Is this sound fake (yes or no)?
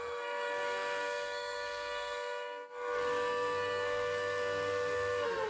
yes